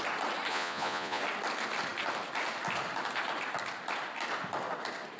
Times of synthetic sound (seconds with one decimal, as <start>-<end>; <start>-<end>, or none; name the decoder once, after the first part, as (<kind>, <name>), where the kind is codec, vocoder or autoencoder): 0.5-1.2 (vocoder, Vocos)